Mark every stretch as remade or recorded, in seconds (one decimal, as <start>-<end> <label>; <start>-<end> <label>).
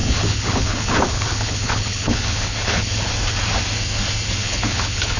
0.0-3.1 remade; 3.1-4.4 recorded; 4.4-5.2 remade